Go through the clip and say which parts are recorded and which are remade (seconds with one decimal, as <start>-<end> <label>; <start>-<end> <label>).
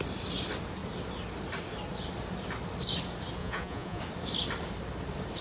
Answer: 0.0-3.4 recorded; 3.4-4.0 remade; 4.0-5.4 recorded